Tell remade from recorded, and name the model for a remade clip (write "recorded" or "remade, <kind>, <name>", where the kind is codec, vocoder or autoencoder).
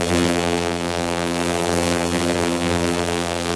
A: remade, vocoder, BigVGAN v2